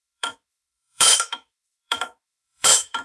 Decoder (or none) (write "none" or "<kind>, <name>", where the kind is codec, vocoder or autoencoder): autoencoder, DAC-VAE